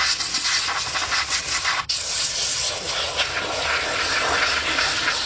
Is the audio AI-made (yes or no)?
no